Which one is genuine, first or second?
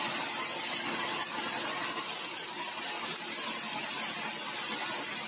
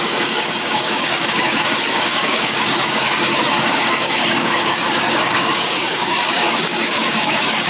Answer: first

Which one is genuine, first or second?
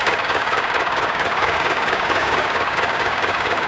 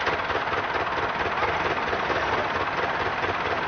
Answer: second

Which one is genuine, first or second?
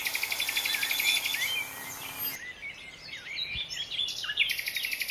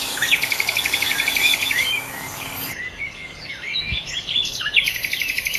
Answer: first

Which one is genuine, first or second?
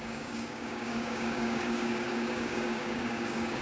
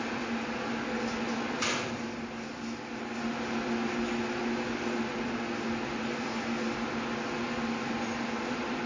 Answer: second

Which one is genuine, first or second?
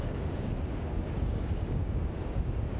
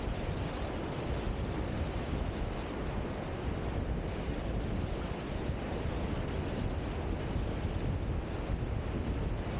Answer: second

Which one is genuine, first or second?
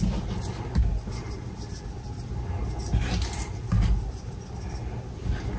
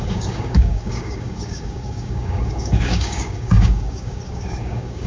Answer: first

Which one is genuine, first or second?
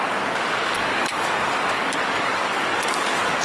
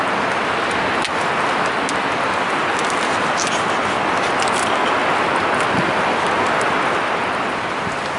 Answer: second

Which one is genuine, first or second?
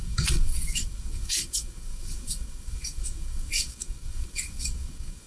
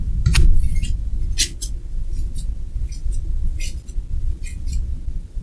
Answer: second